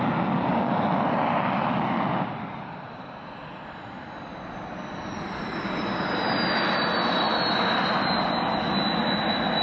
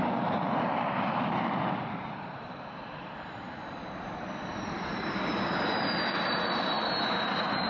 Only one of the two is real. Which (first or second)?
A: first